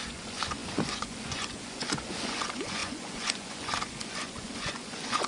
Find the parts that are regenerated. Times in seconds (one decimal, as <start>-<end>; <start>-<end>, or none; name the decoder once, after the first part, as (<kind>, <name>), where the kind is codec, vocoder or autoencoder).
0.0-5.3 (vocoder, Vocos)